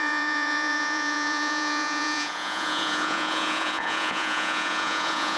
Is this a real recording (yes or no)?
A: no